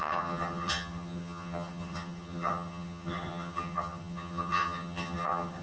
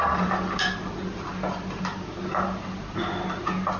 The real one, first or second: second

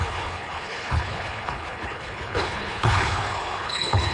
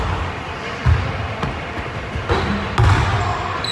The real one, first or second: second